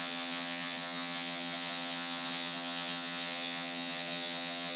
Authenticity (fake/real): fake